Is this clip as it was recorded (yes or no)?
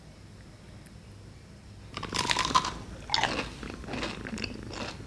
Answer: yes